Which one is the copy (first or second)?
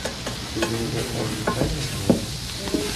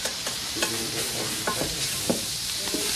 second